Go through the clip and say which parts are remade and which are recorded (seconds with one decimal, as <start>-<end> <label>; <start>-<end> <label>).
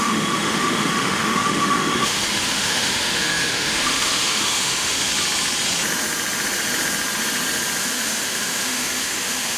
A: 0.0-5.1 remade; 5.1-7.8 recorded; 7.8-9.6 remade